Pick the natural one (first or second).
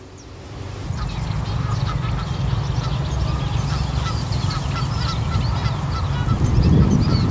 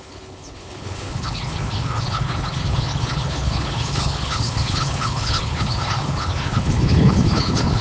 first